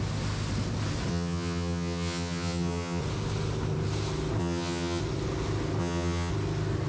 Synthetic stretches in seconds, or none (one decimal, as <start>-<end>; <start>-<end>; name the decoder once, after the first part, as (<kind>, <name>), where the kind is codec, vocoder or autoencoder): 1.1-3.0 (vocoder, HiFi-GAN); 4.4-5.0; 5.8-6.3